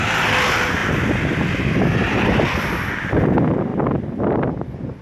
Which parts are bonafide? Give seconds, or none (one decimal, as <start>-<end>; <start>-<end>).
0.0-5.0